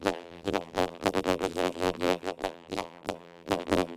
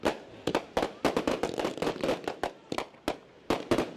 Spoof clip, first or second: first